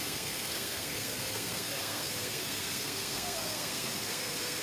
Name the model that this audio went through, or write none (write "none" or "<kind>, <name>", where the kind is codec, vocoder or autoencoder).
codec, SNAC